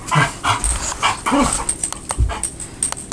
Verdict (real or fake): real